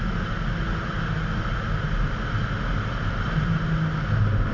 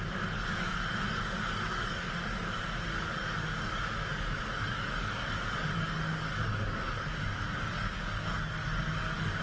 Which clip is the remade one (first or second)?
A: second